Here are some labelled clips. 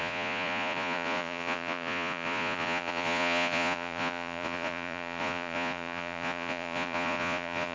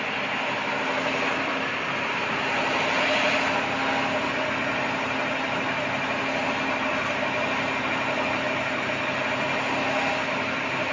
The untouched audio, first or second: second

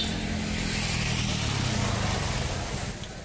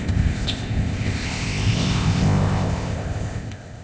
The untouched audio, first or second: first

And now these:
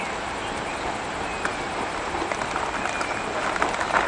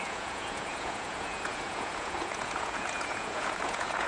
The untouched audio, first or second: first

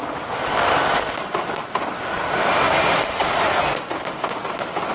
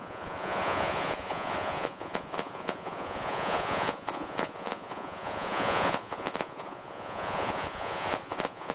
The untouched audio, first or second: first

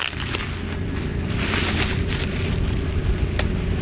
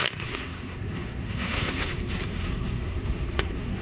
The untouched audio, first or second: first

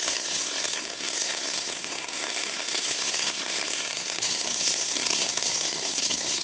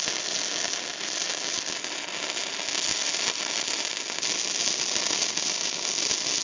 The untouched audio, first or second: second